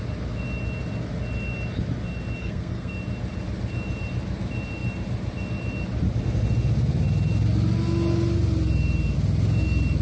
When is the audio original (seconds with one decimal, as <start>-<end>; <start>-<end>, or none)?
0.0-2.4; 2.9-10.0